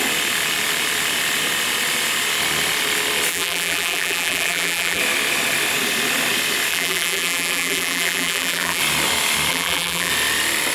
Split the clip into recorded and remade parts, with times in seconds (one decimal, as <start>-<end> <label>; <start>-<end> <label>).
0.0-3.3 recorded; 3.3-5.0 remade; 5.0-6.7 recorded; 6.7-8.8 remade; 8.8-9.5 recorded; 9.5-10.1 remade; 10.1-10.7 recorded